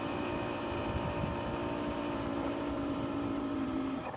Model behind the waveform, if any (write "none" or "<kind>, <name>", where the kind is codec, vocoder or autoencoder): vocoder, BigVGAN v2